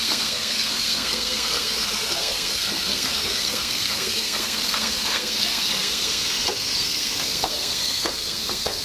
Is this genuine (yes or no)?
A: no